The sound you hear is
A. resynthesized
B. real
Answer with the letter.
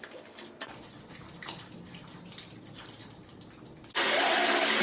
B